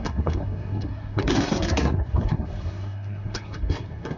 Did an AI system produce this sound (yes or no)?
yes